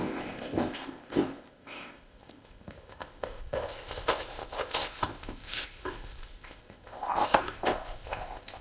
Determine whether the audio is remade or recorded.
remade